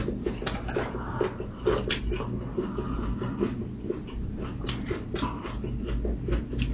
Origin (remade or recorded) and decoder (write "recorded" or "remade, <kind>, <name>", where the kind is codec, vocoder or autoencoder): recorded